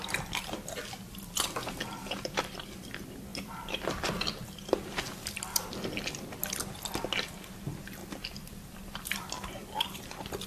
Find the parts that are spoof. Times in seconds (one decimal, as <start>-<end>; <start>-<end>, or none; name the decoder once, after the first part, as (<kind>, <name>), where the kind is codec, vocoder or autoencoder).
3.3-4.2 (vocoder, BigVGAN v2); 5.5-6.3; 8.0-9.3